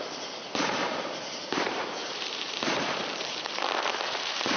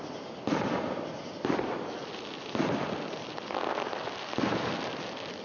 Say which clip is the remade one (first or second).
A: first